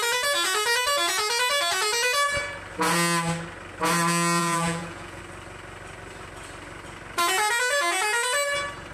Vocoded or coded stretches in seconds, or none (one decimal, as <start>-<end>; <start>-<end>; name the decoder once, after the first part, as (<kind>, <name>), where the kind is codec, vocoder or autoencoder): 4.4-5.2 (vocoder, Vocos)